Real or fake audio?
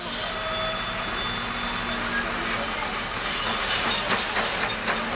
real